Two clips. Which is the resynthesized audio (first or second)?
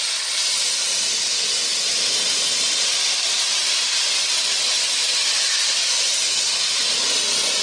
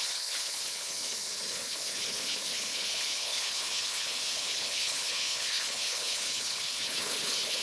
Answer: second